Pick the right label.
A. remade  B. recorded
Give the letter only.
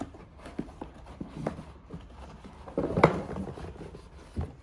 A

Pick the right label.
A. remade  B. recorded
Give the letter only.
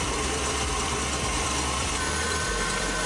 A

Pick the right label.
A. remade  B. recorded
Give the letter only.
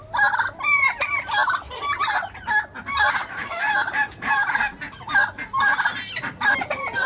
B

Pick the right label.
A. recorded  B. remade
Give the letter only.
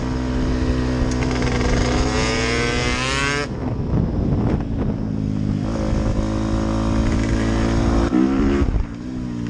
A